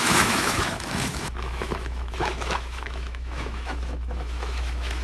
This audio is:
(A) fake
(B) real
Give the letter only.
A